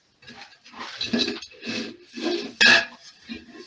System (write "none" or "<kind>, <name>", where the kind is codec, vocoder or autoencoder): none